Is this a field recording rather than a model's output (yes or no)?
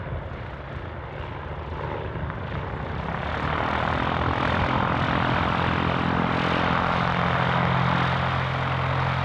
yes